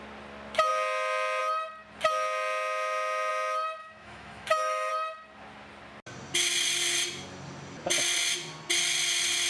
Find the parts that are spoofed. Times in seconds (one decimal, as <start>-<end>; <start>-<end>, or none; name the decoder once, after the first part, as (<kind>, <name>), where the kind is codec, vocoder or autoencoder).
3.8-4.9 (autoencoder, DAC-VAE)